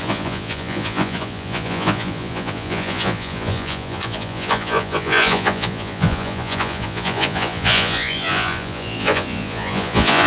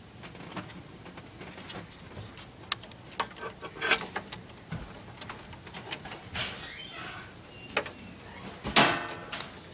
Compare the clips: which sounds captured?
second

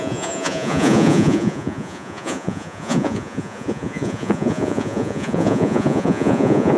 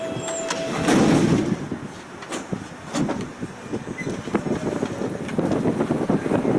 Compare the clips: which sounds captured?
second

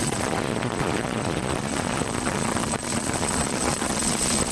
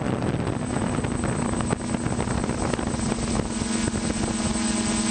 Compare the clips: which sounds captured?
second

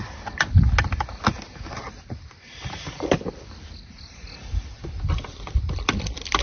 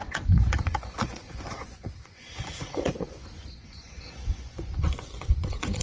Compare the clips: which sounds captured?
first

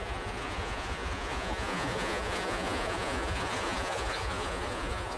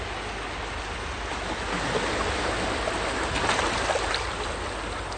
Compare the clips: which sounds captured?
second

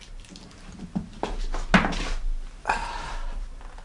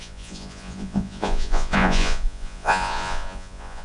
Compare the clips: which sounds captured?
first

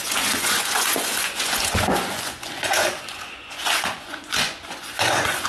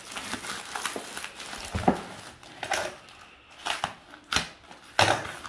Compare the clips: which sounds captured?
second